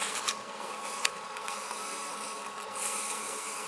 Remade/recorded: remade